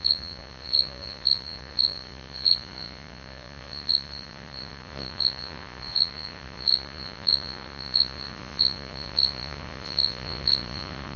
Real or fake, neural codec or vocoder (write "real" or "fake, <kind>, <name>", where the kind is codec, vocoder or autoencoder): fake, vocoder, Vocos